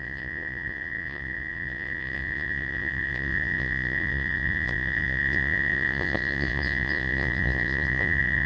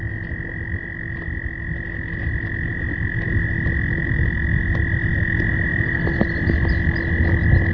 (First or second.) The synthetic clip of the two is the first